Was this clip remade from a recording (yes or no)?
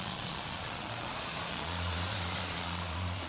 yes